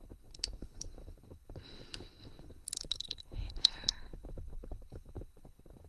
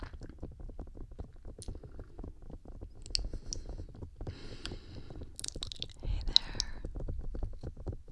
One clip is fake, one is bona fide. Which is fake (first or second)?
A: first